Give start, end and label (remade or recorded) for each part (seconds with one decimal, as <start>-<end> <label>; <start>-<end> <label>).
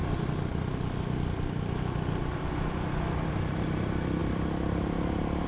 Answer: 0.0-5.5 remade